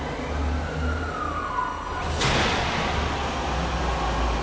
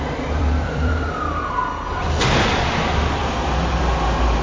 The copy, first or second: second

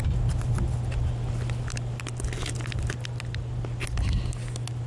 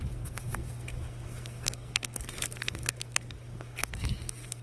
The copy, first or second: second